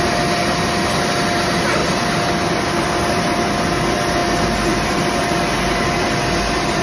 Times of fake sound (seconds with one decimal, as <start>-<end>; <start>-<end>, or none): none